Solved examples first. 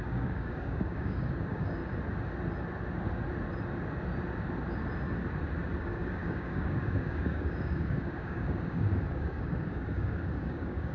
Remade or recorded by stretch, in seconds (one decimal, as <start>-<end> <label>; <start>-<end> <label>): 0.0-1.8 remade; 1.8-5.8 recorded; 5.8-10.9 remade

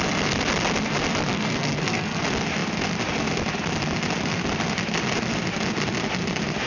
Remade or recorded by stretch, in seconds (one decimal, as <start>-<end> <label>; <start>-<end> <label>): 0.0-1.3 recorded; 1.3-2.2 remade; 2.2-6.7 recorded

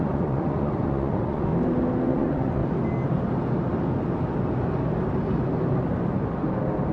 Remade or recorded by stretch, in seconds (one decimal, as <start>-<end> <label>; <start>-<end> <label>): 0.0-1.5 remade; 1.5-2.1 recorded; 2.1-2.6 remade; 2.6-6.9 recorded